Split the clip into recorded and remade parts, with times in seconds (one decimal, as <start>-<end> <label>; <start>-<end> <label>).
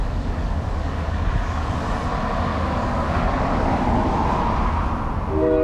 0.0-1.8 remade; 1.8-2.5 recorded; 2.5-4.1 remade; 4.1-5.6 recorded